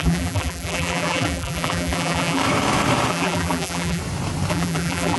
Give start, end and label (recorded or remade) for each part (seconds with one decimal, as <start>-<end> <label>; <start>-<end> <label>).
0.0-2.4 remade; 2.4-3.1 recorded; 3.1-4.0 remade; 4.0-4.5 recorded; 4.5-5.2 remade